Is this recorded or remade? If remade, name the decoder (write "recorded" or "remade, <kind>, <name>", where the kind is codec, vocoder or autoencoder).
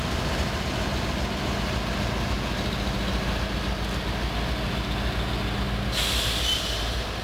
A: recorded